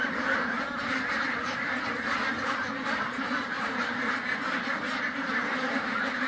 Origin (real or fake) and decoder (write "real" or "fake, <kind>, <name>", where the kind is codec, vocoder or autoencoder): fake, vocoder, BigVGAN v2